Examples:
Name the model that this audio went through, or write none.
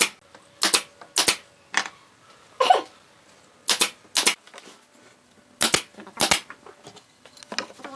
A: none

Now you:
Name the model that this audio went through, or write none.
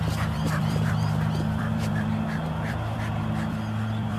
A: vocoder, BigVGAN v2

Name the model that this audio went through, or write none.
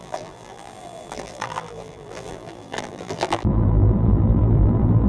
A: vocoder, BigVGAN v2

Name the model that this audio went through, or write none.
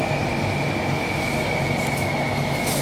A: none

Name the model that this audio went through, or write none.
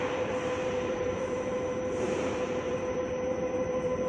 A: vocoder, BigVGAN v2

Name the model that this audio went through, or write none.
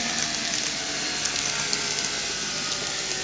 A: vocoder, BigVGAN v2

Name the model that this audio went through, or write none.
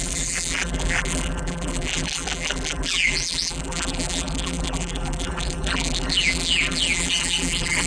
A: vocoder, BigVGAN v2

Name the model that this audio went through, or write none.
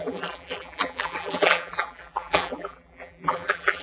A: vocoder, BigVGAN v2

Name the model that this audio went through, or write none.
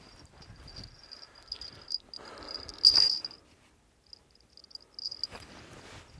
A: none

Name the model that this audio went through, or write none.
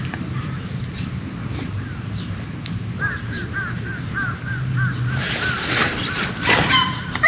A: vocoder, BigVGAN v2